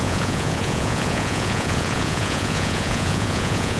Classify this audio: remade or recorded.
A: remade